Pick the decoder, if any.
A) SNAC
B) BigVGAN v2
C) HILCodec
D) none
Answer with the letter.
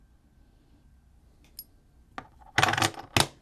D